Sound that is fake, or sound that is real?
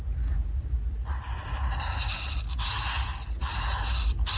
real